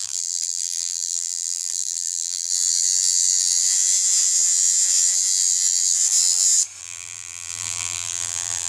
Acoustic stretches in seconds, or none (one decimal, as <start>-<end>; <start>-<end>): 2.5-6.8